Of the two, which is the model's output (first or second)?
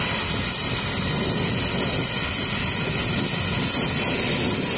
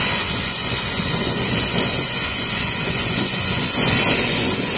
second